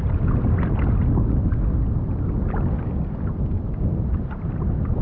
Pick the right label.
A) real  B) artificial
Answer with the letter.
A